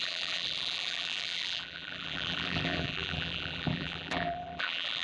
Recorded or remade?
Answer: remade